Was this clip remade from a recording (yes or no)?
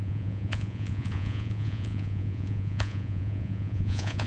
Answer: yes